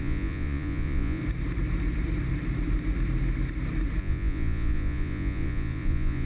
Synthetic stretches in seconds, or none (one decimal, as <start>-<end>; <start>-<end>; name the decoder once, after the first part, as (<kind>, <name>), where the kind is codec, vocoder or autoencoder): 0.0-1.2 (vocoder, Vocos); 4.0-6.3